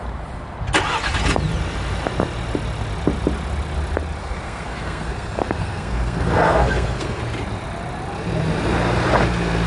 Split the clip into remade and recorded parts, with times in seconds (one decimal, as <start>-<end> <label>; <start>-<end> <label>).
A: 0.0-4.2 recorded; 4.2-7.2 remade; 7.2-9.7 recorded

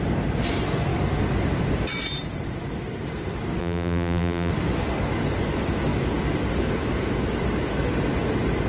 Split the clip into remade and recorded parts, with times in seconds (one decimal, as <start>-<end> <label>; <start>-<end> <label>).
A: 0.0-3.6 recorded; 3.6-4.5 remade; 4.5-8.7 recorded

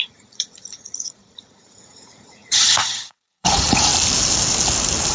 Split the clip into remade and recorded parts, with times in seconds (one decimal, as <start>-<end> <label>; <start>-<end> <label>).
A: 0.0-3.9 remade; 3.9-5.1 recorded

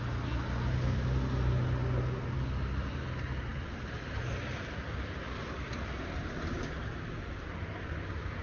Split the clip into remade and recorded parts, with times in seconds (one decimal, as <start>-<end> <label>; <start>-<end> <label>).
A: 0.0-3.5 recorded; 3.5-6.2 remade; 6.2-8.4 recorded

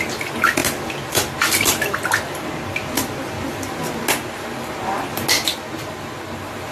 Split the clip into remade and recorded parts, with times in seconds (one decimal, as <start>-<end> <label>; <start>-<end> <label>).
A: 0.0-6.7 recorded

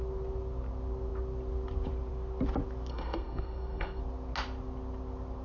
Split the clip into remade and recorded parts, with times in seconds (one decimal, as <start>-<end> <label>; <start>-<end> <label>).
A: 0.0-2.9 recorded; 2.9-4.0 remade; 4.0-5.4 recorded

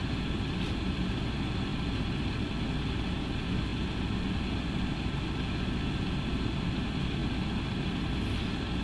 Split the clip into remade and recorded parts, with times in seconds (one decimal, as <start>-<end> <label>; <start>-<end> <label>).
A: 0.0-7.2 recorded; 7.2-8.4 remade; 8.4-8.8 recorded

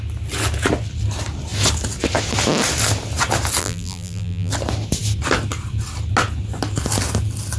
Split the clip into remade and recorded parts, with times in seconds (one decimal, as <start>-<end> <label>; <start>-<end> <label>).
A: 0.0-3.6 recorded; 3.6-4.5 remade; 4.5-7.6 recorded